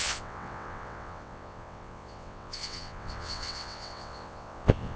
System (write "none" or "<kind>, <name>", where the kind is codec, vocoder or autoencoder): vocoder, WaveNeXt